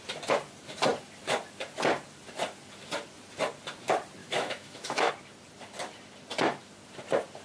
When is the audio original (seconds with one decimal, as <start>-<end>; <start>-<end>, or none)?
0.0-4.2; 5.1-7.4